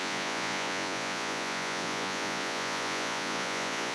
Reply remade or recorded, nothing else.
remade